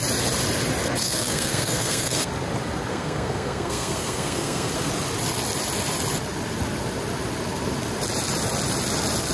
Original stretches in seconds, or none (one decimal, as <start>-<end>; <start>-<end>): 0.0-1.0; 2.3-2.9; 4.9-9.3